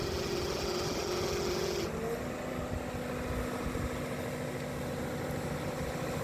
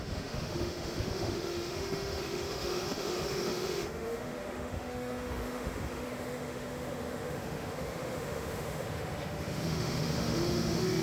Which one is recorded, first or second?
first